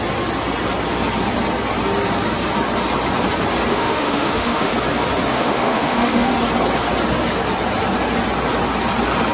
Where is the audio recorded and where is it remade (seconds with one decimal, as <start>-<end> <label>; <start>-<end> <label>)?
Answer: 0.0-3.7 recorded; 3.7-4.7 remade; 4.7-5.3 recorded; 5.3-6.3 remade; 6.3-9.3 recorded